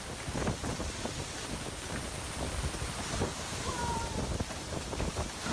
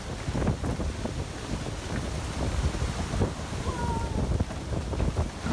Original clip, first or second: second